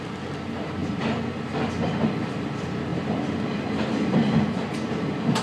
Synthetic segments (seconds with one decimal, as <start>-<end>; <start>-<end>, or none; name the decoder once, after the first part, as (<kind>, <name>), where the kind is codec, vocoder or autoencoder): none